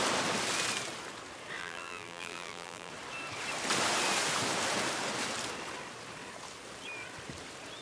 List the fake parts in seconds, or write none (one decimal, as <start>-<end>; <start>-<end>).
1.6-2.9